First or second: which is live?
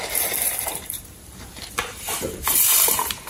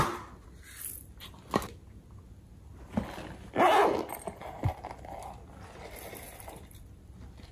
second